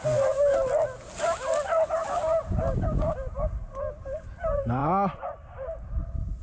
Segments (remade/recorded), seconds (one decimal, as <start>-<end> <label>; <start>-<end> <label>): 0.0-2.4 recorded; 2.4-3.8 remade; 3.8-4.8 recorded; 4.8-6.4 remade